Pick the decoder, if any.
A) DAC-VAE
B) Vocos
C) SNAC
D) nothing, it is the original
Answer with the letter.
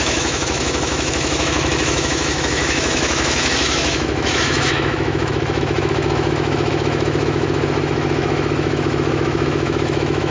A